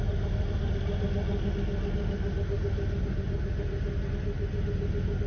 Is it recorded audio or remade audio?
recorded